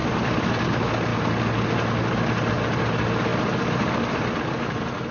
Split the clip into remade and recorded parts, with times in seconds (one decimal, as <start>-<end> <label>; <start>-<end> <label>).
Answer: 0.0-5.1 recorded